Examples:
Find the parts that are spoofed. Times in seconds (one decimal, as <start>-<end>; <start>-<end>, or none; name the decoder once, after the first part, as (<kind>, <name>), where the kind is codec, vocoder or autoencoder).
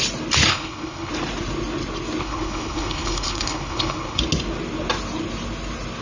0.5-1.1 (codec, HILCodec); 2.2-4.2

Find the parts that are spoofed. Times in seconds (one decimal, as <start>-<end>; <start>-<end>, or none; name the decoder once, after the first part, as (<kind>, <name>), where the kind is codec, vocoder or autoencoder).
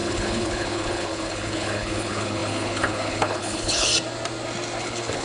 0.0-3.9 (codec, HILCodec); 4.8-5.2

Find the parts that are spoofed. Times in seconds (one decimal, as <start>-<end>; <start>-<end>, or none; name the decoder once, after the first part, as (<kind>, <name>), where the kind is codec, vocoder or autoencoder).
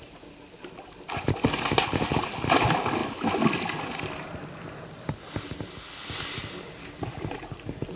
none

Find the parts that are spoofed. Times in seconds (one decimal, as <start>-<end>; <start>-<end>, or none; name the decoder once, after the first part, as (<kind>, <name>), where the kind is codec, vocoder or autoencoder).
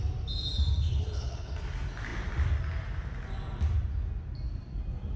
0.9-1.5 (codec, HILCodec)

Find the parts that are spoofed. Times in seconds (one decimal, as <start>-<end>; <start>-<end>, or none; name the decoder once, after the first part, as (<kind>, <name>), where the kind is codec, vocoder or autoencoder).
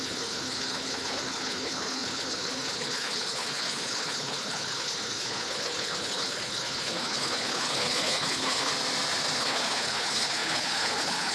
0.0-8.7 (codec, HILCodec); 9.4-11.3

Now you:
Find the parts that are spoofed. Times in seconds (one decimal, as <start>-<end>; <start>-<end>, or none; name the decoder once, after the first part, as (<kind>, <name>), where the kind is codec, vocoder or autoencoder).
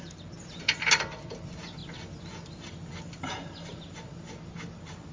none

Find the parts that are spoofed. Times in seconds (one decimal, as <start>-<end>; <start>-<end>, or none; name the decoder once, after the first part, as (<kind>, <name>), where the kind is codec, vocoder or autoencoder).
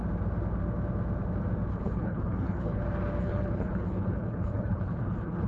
1.7-2.8 (codec, HILCodec); 3.2-5.5